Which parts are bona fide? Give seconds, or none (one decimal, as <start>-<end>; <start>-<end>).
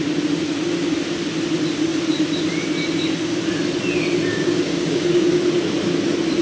0.0-4.3; 5.3-6.4